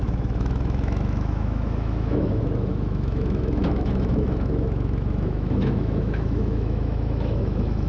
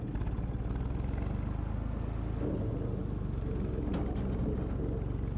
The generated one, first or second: first